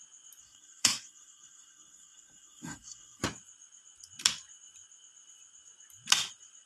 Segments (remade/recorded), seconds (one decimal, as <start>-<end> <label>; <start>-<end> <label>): 0.0-0.4 recorded; 0.4-3.2 remade; 3.2-6.7 recorded